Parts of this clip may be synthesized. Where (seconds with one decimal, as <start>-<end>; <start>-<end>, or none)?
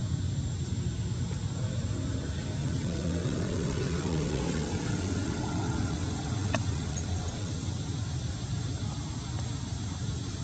2.6-7.7